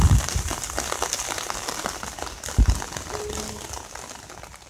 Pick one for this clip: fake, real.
real